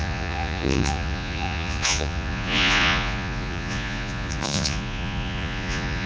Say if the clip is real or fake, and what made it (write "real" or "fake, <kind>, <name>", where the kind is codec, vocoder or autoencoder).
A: fake, vocoder, Vocos